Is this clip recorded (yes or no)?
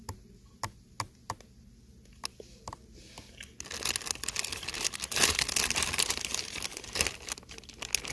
yes